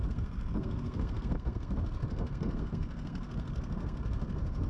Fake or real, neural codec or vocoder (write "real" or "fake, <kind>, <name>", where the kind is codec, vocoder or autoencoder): fake, codec, SNAC